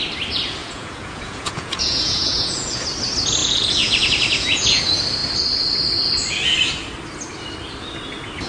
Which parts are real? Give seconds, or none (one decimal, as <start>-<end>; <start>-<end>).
0.0-0.6; 2.7-3.4; 4.8-8.5